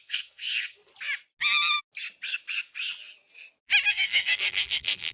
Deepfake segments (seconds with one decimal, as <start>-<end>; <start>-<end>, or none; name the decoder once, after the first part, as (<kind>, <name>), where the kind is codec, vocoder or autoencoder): 0.0-0.8 (codec, SNAC); 3.9-5.1